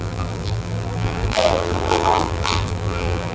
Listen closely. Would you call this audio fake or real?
fake